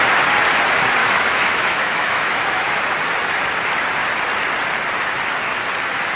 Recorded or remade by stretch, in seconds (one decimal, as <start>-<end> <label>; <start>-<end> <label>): 0.0-1.0 recorded; 1.0-2.8 remade; 2.8-6.2 recorded